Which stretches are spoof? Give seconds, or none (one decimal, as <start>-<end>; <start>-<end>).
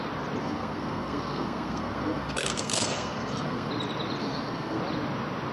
0.4-3.7; 4.2-4.8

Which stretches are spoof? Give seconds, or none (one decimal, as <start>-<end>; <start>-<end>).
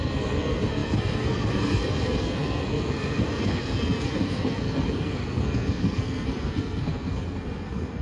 0.0-8.0